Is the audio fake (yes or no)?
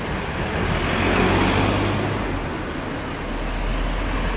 no